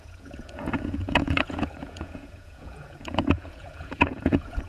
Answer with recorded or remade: remade